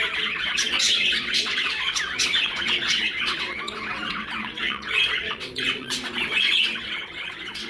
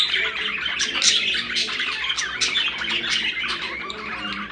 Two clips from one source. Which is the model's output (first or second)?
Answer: first